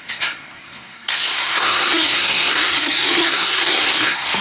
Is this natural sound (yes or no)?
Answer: no